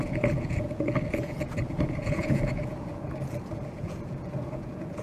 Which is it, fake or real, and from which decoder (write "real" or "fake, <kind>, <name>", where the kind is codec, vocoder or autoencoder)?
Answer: fake, vocoder, Vocos